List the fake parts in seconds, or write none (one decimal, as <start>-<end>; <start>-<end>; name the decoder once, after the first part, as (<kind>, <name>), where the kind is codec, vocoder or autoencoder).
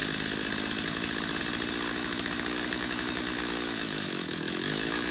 1.9-5.1 (autoencoder, DAC-VAE)